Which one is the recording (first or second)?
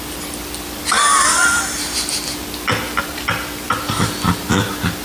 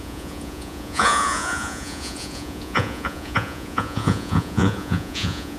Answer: first